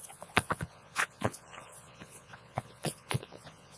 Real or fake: fake